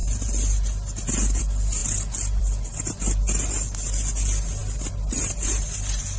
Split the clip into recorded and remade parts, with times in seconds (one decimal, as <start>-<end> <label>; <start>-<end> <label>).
0.0-6.2 recorded